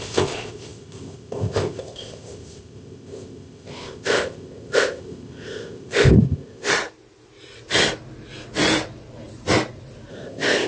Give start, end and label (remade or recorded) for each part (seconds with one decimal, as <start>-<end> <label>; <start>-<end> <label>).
0.0-6.7 remade; 6.7-10.1 recorded; 10.1-10.7 remade